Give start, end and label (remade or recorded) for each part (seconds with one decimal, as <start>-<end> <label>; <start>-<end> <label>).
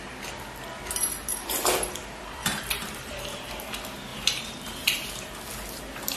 0.0-2.4 recorded; 2.4-3.5 remade; 3.5-4.1 recorded; 4.1-5.3 remade; 5.3-6.2 recorded